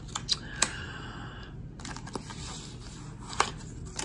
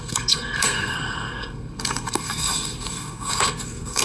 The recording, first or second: first